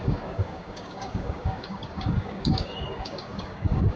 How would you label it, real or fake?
fake